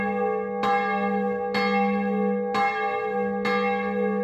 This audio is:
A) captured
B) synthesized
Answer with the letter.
A